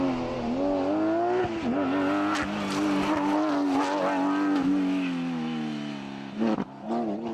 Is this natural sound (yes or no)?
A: yes